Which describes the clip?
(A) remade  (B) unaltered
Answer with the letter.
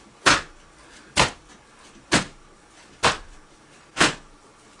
B